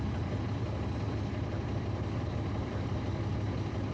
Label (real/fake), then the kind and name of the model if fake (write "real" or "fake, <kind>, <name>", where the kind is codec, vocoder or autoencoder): real